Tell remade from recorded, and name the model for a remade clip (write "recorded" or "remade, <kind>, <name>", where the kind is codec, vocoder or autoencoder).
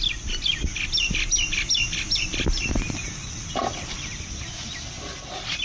recorded